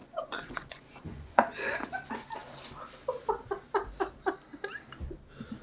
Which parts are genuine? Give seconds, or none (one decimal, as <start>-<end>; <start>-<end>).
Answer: 1.9-5.6